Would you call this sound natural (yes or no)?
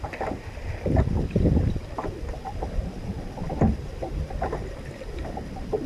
yes